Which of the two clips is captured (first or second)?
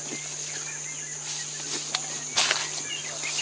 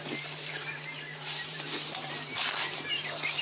first